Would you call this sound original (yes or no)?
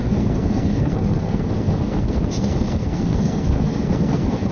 no